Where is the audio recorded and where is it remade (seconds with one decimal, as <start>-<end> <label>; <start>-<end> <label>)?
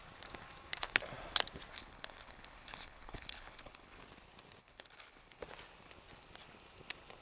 0.0-1.7 recorded; 1.7-4.0 remade; 4.0-4.6 recorded; 4.6-5.4 remade; 5.4-7.2 recorded